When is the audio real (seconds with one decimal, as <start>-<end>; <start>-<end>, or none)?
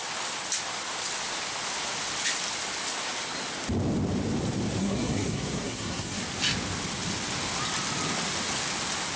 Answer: 0.0-4.8; 6.2-9.2